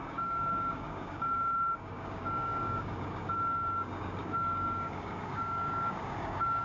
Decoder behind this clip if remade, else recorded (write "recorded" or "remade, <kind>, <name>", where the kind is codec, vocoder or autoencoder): remade, codec, DAC